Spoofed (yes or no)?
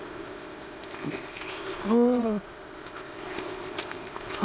yes